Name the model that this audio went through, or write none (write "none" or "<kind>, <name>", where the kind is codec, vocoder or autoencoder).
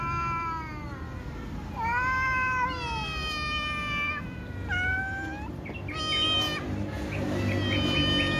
none